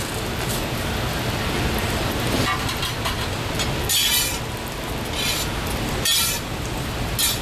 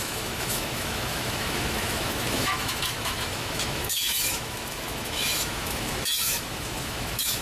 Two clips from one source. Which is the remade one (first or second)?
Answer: second